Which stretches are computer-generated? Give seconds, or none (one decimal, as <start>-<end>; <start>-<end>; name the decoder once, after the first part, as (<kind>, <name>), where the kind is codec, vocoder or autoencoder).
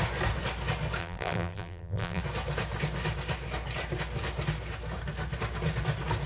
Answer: 1.0-2.2 (vocoder, BigVGAN v2)